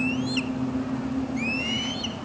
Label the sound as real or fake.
real